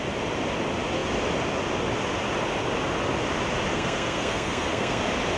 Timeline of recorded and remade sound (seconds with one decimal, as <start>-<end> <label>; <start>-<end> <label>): 0.0-3.7 recorded; 3.7-5.0 remade; 5.0-5.4 recorded